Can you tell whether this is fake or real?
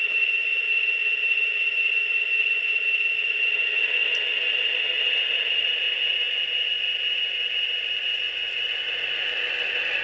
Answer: real